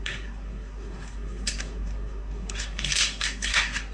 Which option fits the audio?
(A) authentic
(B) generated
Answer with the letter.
B